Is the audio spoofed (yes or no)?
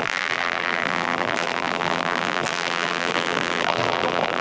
yes